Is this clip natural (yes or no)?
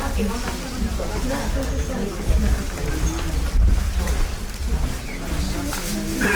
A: yes